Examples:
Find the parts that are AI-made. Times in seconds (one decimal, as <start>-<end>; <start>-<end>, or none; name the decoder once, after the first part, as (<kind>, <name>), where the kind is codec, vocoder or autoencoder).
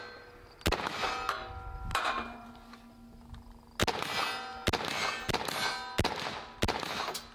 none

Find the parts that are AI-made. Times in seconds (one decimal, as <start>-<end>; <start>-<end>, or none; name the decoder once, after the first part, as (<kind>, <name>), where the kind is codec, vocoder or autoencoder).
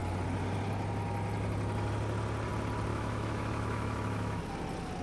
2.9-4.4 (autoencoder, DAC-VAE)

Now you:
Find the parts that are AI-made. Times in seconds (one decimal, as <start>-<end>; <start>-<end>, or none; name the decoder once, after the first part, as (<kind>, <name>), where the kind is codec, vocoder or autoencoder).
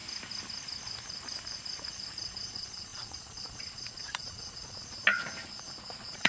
1.9-5.0 (vocoder, Vocos); 5.5-6.3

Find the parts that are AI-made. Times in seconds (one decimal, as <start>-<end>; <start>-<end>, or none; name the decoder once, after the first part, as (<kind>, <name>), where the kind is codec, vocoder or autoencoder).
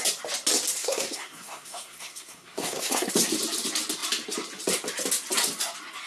0.8-3.1 (codec, SNAC)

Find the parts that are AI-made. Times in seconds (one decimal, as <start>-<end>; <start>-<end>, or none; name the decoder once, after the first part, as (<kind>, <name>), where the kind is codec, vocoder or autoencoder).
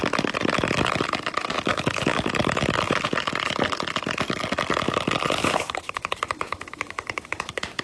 1.7-2.3 (codec, DAC); 5.4-7.8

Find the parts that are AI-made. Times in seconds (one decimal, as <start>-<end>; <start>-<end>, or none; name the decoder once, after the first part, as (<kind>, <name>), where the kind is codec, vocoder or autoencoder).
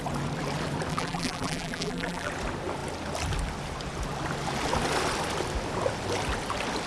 0.9-2.3 (vocoder, BigVGAN v2)